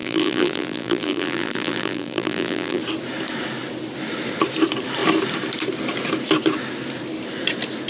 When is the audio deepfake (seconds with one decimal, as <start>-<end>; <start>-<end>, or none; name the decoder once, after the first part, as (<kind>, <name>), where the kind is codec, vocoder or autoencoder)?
0.0-2.8 (vocoder, BigVGAN v2)